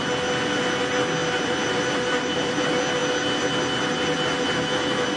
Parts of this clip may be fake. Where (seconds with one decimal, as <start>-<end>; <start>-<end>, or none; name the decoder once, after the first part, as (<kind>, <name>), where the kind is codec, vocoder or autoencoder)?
1.2-2.5 (vocoder, BigVGAN v2)